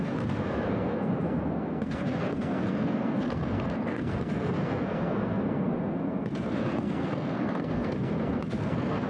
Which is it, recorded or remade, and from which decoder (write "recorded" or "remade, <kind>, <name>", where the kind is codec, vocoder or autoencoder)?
remade, codec, SNAC